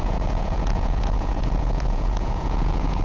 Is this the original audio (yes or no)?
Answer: no